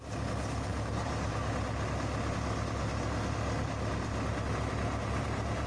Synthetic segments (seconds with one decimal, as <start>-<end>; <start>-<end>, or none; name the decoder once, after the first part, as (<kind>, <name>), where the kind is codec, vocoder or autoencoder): 0.7-1.3 (vocoder, BigVGAN v2)